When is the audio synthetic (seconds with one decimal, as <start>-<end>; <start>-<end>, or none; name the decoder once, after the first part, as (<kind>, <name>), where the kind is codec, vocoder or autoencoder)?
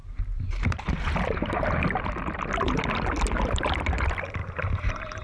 0.0-1.7 (vocoder, BigVGAN v2); 4.4-5.2